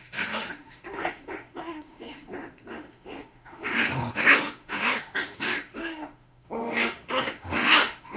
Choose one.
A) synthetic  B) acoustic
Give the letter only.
A